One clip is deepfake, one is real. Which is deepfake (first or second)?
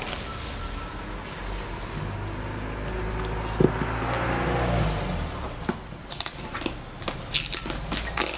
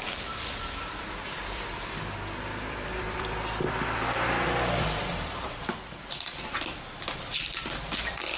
second